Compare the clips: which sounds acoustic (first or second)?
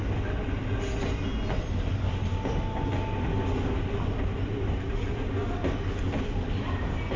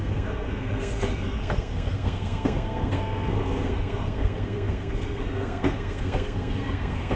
first